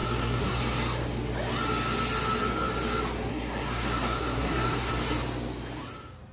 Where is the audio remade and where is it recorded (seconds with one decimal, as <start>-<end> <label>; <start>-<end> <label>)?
0.0-0.6 remade; 0.6-3.3 recorded; 3.3-4.9 remade; 4.9-6.3 recorded